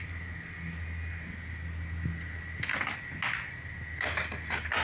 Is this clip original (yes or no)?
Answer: yes